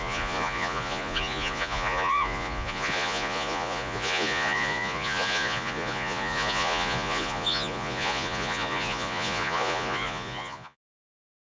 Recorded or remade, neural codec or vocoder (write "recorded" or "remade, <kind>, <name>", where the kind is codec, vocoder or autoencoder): remade, vocoder, Vocos